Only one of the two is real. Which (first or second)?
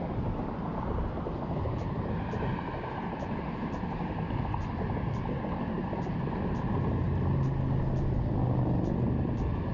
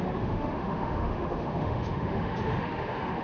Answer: first